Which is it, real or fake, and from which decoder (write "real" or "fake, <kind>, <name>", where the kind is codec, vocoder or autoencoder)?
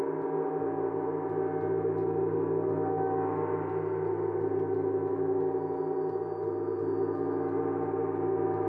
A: real